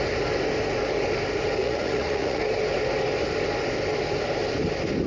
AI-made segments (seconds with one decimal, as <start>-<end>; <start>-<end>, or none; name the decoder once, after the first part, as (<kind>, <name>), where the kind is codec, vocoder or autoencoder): 1.6-2.4 (vocoder, Vocos)